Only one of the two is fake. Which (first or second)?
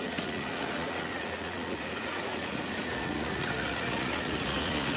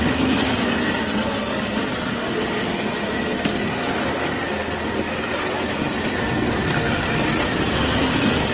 first